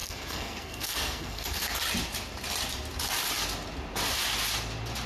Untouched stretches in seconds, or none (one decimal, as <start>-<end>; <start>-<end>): 1.8-5.1